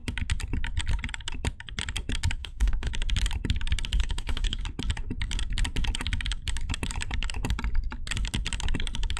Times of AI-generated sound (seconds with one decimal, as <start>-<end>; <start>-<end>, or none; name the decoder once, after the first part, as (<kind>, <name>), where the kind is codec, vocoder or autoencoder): 2.4-2.9 (codec, DAC); 4.0-4.6